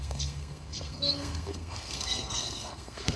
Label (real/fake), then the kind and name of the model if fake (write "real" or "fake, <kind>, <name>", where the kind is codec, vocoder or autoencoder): fake, codec, SNAC